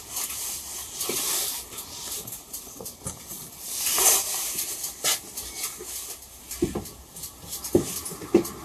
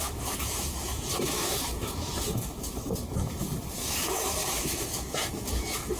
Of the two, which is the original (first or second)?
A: first